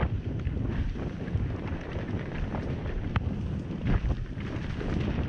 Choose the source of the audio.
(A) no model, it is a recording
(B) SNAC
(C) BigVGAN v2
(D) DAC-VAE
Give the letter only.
A